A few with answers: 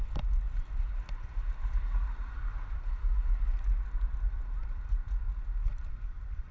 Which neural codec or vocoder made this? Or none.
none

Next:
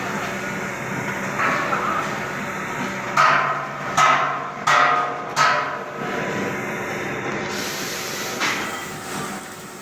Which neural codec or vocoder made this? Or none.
none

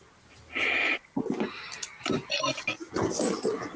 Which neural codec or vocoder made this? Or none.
none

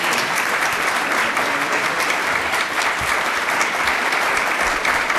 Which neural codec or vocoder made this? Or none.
vocoder, BigVGAN v2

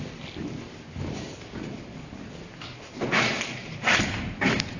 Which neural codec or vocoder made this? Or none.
vocoder, BigVGAN v2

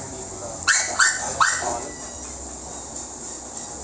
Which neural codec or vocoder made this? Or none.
none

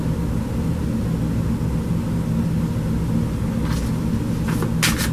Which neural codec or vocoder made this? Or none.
none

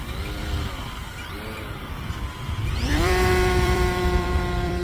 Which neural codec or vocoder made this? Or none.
vocoder, BigVGAN v2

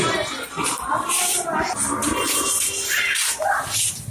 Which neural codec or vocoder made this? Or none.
none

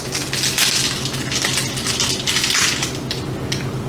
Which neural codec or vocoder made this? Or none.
none